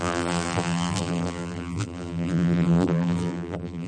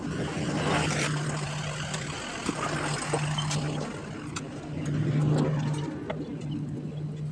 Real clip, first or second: second